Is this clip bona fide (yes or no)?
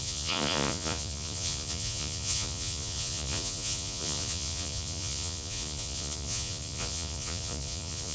no